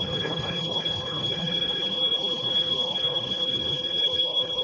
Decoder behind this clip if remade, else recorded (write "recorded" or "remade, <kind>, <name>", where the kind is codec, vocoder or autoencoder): remade, codec, HILCodec